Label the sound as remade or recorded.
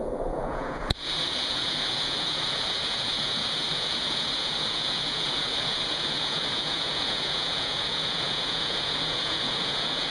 remade